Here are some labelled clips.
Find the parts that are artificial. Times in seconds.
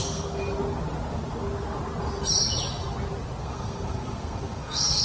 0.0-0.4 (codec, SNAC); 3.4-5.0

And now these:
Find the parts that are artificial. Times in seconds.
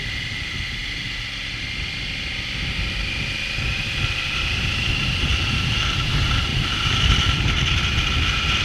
6.5-7.6 (vocoder, BigVGAN v2)